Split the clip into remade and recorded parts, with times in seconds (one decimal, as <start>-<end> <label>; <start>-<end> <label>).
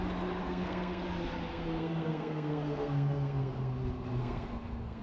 0.0-0.4 recorded; 0.4-1.0 remade; 1.0-1.5 recorded; 1.5-3.7 remade; 3.7-4.2 recorded; 4.2-5.0 remade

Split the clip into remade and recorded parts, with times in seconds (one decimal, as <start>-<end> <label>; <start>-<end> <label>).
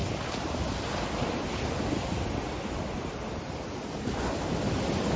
0.0-5.2 recorded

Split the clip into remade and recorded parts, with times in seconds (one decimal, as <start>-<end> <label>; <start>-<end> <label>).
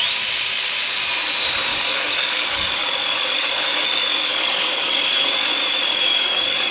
0.0-1.7 recorded; 1.7-5.5 remade; 5.5-5.9 recorded; 5.9-6.7 remade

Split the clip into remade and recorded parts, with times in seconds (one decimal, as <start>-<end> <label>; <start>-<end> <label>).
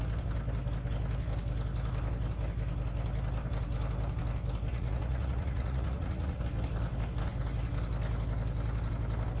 0.0-4.7 recorded; 4.7-6.4 remade; 6.4-9.4 recorded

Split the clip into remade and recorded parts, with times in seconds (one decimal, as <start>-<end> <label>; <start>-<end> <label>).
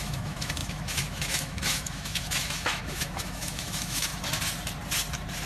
0.0-4.1 remade; 4.1-5.5 recorded